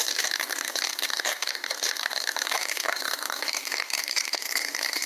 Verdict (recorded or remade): remade